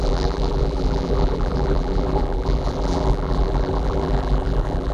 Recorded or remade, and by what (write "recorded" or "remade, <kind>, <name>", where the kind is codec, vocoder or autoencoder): remade, vocoder, BigVGAN v2